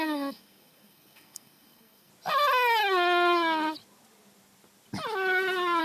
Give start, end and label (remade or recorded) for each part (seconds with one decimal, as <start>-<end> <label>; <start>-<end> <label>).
0.0-2.1 remade; 2.1-5.8 recorded